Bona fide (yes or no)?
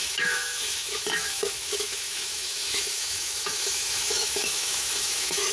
no